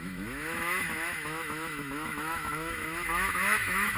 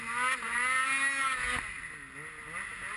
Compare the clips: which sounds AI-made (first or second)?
first